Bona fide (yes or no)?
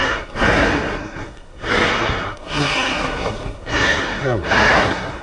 no